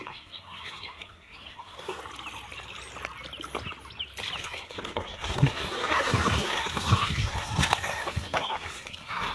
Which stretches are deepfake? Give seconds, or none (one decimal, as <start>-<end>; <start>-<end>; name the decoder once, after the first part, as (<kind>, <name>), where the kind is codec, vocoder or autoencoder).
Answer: 0.0-2.0 (codec, SNAC); 4.4-9.3